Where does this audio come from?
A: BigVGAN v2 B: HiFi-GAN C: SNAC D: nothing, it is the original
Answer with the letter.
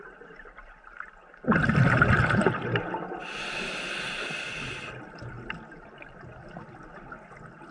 D